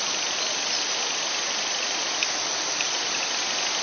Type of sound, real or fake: real